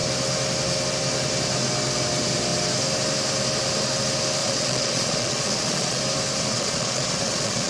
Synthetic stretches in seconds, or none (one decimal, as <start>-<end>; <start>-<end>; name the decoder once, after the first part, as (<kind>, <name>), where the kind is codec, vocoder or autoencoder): 4.4-6.0 (vocoder, Vocos); 6.5-7.7